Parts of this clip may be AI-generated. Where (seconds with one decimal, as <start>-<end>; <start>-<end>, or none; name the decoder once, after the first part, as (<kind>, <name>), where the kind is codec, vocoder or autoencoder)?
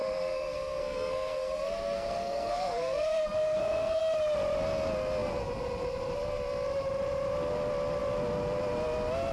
0.0-4.0 (codec, SNAC)